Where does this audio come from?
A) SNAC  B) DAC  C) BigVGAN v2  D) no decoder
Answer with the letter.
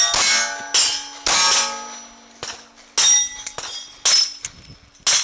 D